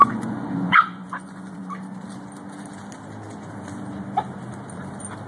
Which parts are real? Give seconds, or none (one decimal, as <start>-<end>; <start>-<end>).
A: 1.7-5.3